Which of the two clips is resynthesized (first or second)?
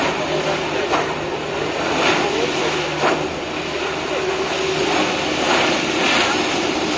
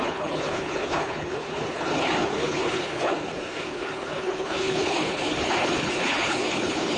second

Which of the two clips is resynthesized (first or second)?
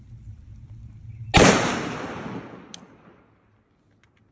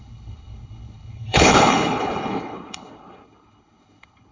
second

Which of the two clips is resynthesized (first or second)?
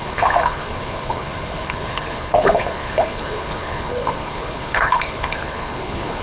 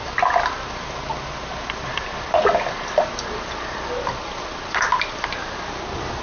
first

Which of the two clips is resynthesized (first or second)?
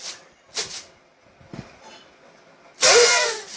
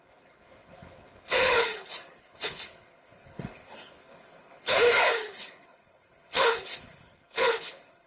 second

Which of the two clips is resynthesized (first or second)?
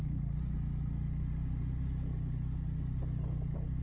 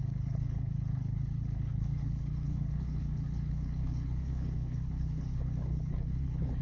second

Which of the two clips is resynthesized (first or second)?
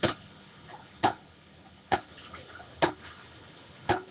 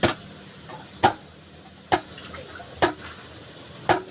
first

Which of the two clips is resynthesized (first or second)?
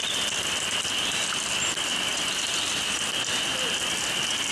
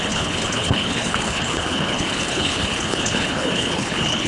second